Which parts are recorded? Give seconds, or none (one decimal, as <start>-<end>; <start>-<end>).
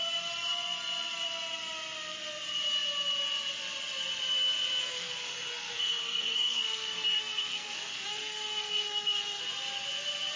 0.0-4.8; 9.4-10.4